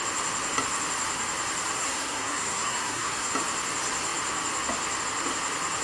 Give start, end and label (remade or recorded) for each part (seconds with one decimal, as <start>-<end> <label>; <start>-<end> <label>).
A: 0.0-1.8 recorded; 1.8-3.3 remade; 3.3-5.8 recorded